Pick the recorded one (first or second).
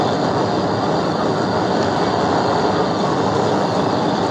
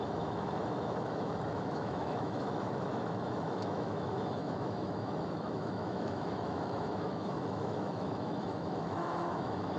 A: first